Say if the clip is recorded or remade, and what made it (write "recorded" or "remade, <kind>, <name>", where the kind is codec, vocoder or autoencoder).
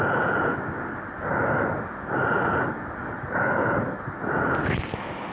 recorded